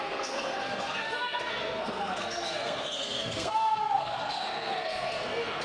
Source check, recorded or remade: remade